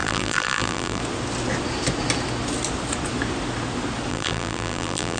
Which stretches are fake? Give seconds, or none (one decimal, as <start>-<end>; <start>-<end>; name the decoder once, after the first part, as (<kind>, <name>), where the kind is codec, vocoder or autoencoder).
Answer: 0.0-1.0 (vocoder, BigVGAN v2); 4.1-5.2